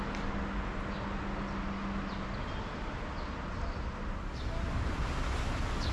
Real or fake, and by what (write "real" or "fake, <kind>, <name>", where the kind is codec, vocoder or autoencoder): real